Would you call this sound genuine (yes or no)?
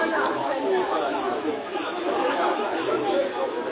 no